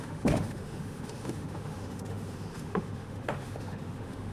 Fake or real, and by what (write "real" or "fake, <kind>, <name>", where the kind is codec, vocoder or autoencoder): fake, autoencoder, DAC-VAE